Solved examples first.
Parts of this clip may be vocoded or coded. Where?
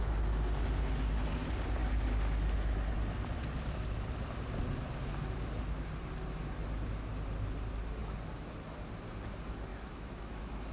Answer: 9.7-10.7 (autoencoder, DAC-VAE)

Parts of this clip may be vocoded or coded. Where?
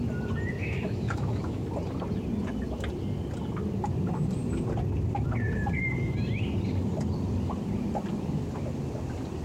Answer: 0.6-1.6 (autoencoder, DAC-VAE)